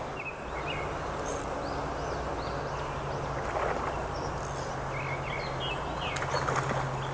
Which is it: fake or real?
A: real